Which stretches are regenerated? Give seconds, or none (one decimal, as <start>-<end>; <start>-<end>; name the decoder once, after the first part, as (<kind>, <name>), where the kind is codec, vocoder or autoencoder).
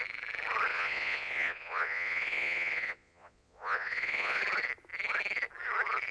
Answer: 0.7-4.4 (vocoder, Vocos)